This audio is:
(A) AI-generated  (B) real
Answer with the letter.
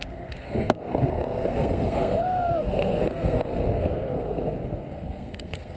A